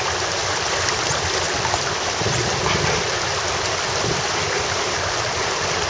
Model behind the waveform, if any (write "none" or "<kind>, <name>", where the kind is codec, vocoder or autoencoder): vocoder, BigVGAN v2